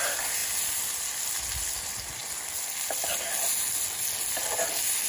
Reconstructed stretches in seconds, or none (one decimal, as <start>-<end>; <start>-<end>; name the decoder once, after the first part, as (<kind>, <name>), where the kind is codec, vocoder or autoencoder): none